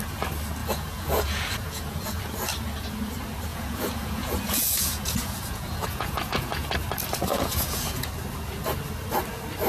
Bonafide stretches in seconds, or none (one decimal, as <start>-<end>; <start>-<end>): 0.0-0.6; 2.2-3.5; 6.7-7.3; 8.1-9.7